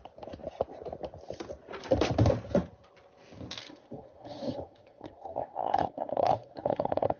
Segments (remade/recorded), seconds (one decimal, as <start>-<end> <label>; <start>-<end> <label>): 0.0-3.6 recorded; 3.6-7.2 remade